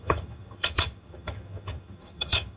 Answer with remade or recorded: remade